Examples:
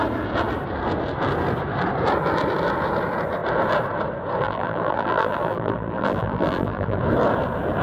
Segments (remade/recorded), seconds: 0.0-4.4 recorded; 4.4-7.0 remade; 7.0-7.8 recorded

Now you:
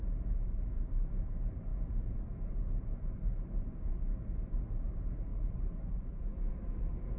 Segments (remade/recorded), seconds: 0.0-3.9 remade; 3.9-4.6 recorded; 4.6-7.2 remade

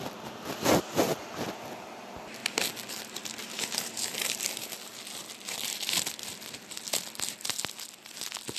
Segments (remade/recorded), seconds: 0.0-3.3 recorded; 3.3-4.4 remade; 4.4-8.6 recorded